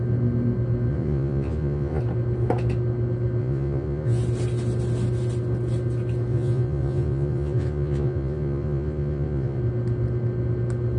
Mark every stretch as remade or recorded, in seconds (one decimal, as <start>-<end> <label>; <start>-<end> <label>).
0.0-0.9 recorded; 0.9-2.0 remade; 2.0-3.4 recorded; 3.4-4.2 remade; 4.2-6.3 recorded; 6.3-9.6 remade; 9.6-11.0 recorded